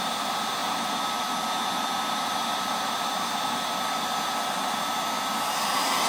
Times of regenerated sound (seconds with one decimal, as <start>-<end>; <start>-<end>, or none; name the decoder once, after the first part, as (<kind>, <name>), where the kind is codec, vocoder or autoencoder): none